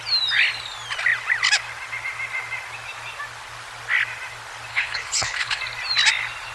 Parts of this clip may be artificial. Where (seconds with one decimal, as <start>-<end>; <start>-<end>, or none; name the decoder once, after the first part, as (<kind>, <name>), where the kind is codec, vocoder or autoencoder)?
4.7-5.6 (codec, HILCodec)